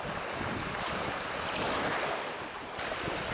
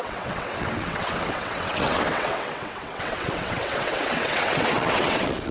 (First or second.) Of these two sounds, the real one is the first